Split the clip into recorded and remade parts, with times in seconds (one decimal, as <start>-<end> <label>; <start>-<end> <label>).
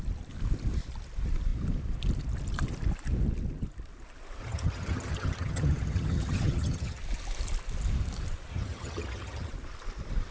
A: 0.0-4.4 recorded; 4.4-7.0 remade; 7.0-8.5 recorded; 8.5-9.5 remade; 9.5-10.3 recorded